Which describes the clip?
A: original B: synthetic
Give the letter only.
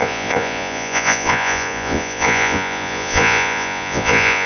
B